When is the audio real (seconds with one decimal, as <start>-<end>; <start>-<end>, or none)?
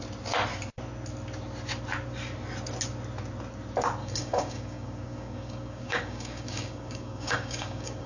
0.0-4.0